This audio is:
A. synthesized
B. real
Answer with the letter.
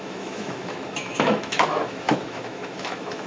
A